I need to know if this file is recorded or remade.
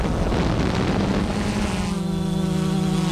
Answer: recorded